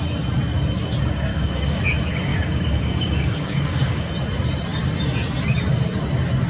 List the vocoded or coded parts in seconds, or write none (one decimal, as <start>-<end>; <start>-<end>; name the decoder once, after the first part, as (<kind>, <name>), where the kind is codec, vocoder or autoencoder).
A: 1.3-1.8 (codec, DAC); 2.3-4.1